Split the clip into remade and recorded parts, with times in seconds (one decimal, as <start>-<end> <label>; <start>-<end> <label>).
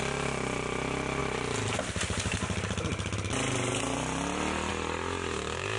0.0-5.8 recorded